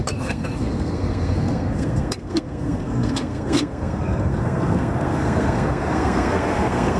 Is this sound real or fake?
fake